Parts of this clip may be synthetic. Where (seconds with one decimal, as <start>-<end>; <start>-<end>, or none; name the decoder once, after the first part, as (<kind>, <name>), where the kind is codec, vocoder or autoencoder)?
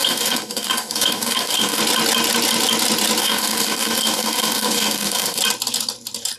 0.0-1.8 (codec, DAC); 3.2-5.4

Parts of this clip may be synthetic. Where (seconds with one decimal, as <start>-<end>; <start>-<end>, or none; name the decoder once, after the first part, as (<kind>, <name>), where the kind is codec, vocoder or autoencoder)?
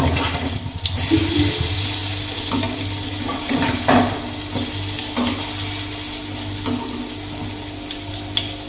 none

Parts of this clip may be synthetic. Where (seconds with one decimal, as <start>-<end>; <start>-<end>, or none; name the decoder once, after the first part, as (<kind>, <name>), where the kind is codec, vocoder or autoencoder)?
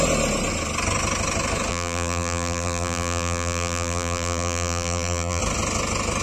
1.7-5.4 (vocoder, BigVGAN v2)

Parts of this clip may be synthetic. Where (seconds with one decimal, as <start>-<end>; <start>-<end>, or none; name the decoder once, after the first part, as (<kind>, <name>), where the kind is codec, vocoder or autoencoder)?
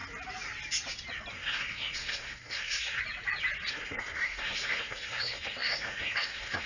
1.3-3.0 (codec, SNAC); 3.7-6.7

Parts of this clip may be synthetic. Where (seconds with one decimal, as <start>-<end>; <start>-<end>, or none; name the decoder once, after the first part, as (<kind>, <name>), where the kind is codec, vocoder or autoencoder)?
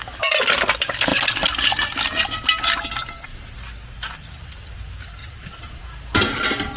5.2-5.8 (vocoder, Vocos)